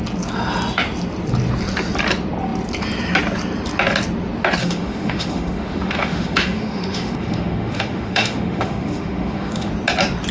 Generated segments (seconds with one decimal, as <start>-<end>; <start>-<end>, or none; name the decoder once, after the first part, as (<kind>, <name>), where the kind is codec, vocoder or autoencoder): 4.6-9.7 (autoencoder, DAC-VAE)